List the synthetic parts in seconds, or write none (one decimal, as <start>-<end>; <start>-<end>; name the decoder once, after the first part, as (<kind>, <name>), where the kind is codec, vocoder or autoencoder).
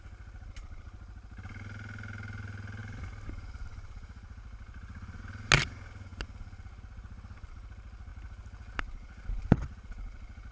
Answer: 2.8-5.2 (vocoder, BigVGAN v2)